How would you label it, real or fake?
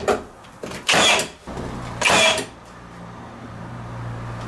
real